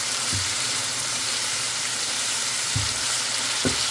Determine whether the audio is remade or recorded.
remade